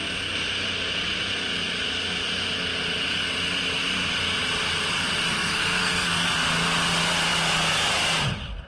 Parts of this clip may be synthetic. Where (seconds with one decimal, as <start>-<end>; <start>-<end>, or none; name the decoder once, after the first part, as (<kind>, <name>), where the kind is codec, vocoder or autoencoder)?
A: 5.3-6.5 (codec, SNAC)